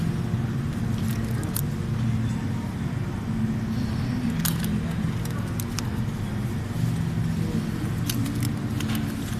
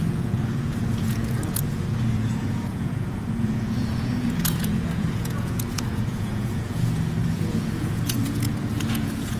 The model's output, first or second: second